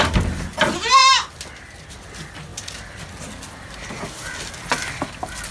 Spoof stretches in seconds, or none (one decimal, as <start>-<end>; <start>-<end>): none